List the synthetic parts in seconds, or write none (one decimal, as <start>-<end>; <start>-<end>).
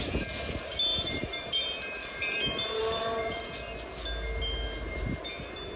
0.9-3.4